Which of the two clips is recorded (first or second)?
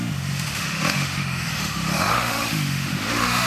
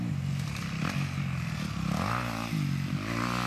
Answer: second